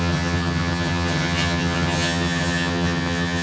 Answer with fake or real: fake